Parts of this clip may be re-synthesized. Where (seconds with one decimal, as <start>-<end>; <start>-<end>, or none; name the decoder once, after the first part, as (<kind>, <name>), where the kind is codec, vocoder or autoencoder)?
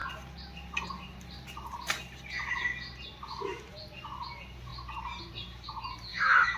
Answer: 6.1-6.6 (autoencoder, DAC-VAE)